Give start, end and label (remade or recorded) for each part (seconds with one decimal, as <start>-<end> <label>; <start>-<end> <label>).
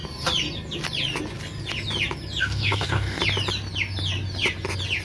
0.0-2.4 recorded; 2.4-3.2 remade; 3.2-5.0 recorded